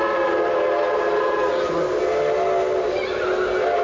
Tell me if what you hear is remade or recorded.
recorded